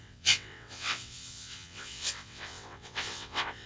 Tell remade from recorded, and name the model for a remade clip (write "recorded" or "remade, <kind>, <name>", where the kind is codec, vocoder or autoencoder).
remade, vocoder, WaveNeXt